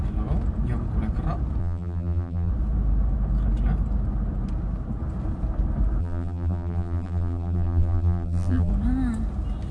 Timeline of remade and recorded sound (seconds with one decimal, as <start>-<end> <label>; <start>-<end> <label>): 0.0-1.6 recorded; 1.6-2.5 remade; 2.5-6.0 recorded; 6.0-8.7 remade; 8.7-9.7 recorded